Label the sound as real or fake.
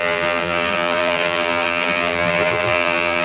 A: fake